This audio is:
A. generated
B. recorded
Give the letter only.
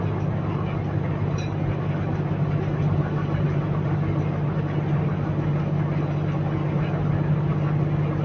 B